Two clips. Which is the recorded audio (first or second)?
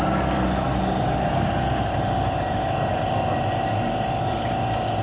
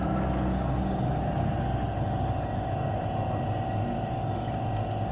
second